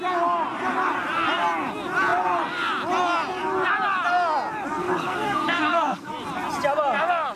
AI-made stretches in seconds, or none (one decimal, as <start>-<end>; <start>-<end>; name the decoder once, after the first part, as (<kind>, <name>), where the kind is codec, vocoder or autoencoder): 4.8-6.1 (codec, SNAC)